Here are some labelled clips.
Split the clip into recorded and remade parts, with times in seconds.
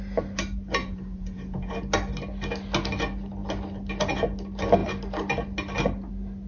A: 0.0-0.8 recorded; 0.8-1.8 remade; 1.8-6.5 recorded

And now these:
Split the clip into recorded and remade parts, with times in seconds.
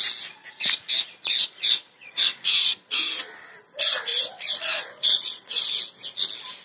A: 0.0-1.2 recorded; 1.2-3.0 remade; 3.0-4.1 recorded; 4.1-5.6 remade; 5.6-6.6 recorded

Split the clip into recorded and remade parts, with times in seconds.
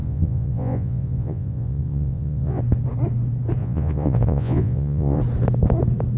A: 0.0-2.6 remade; 2.6-3.6 recorded; 3.6-5.2 remade; 5.2-6.2 recorded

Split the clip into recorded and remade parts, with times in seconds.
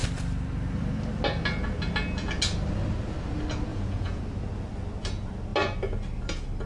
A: 0.0-3.7 recorded; 3.7-4.2 remade; 4.2-6.7 recorded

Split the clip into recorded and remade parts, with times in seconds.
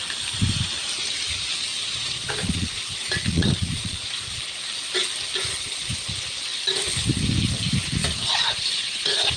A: 0.0-1.7 recorded; 1.7-4.4 remade; 4.4-8.0 recorded; 8.0-9.4 remade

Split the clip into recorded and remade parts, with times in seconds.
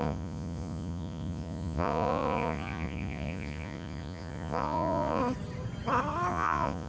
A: 0.0-5.2 remade; 5.2-6.3 recorded; 6.3-6.9 remade